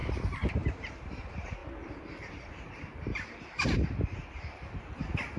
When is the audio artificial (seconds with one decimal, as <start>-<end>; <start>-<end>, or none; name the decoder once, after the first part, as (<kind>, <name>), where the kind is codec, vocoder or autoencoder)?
0.8-1.6 (vocoder, BigVGAN v2); 2.3-3.1